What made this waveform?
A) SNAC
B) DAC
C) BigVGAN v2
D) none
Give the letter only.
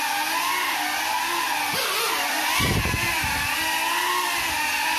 D